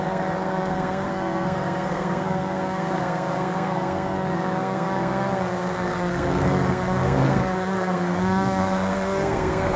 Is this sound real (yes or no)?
no